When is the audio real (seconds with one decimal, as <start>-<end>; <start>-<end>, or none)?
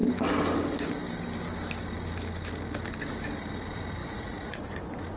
0.0-4.0; 4.8-5.2